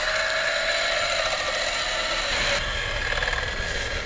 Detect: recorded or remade recorded